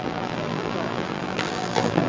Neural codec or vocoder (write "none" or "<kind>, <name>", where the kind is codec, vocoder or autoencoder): vocoder, BigVGAN v2